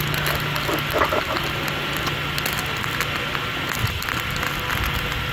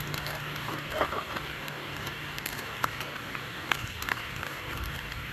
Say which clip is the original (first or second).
first